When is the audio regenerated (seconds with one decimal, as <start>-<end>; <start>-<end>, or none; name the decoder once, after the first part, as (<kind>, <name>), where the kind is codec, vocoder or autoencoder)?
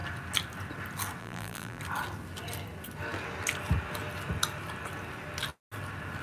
1.2-1.8 (vocoder, BigVGAN v2)